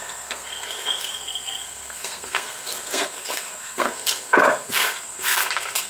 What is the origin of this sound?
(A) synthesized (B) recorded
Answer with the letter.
A